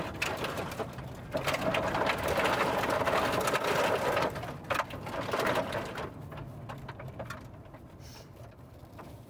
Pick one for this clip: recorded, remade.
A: recorded